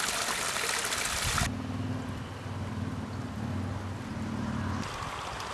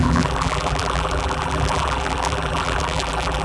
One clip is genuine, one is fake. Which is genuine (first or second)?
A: first